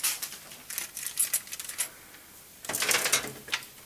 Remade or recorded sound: recorded